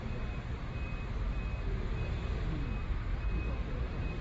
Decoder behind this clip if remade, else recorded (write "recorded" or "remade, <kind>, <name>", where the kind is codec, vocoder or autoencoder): recorded